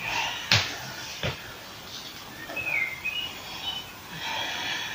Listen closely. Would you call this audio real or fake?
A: real